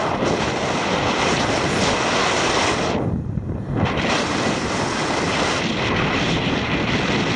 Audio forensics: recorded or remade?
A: recorded